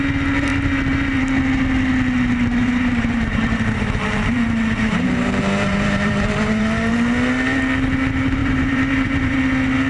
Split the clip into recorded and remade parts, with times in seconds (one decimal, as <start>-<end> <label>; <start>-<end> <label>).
0.0-2.6 recorded; 2.6-6.9 remade; 6.9-8.4 recorded; 8.4-9.4 remade; 9.4-9.9 recorded